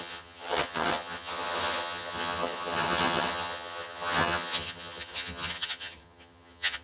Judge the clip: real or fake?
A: fake